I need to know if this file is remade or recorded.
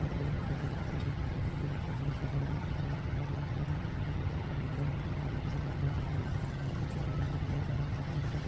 remade